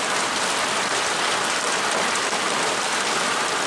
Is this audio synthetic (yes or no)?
yes